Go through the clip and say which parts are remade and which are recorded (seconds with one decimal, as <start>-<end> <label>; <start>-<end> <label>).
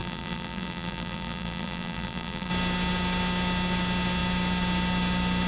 0.0-2.5 remade; 2.5-5.5 recorded